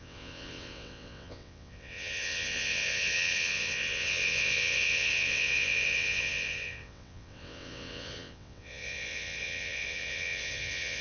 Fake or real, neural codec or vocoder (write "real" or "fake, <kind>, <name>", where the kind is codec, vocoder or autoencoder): fake, vocoder, WaveNeXt